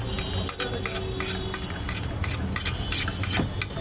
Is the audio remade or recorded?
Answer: recorded